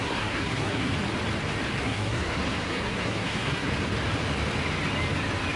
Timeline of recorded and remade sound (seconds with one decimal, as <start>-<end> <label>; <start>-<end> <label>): 0.0-0.9 remade; 0.9-1.8 recorded; 1.8-3.7 remade; 3.7-5.6 recorded